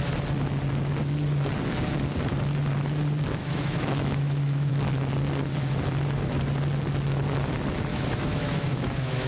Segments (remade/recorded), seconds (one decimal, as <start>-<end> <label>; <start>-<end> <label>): 0.0-3.4 recorded; 3.4-4.7 remade; 4.7-7.9 recorded; 7.9-9.3 remade